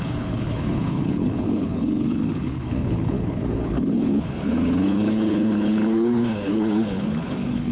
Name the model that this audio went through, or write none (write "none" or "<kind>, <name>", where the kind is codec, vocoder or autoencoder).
codec, HILCodec